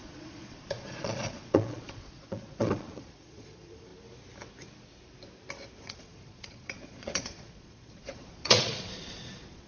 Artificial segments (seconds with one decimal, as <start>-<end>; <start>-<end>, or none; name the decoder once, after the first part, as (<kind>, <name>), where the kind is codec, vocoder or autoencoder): 0.0-3.9 (vocoder, Vocos); 5.8-9.7